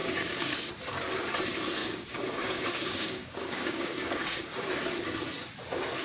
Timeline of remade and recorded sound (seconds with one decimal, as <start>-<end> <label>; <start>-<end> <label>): 0.0-0.7 remade; 0.7-1.8 recorded; 1.8-4.7 remade; 4.7-6.0 recorded